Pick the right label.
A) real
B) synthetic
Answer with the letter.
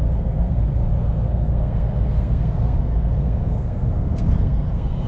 B